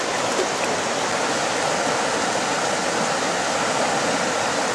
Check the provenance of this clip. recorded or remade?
recorded